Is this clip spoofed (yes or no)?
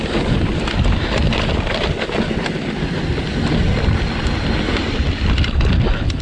no